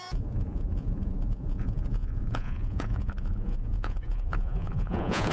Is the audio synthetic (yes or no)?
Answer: yes